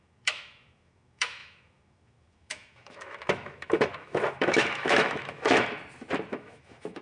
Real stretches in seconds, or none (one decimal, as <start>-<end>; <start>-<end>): 5.8-6.3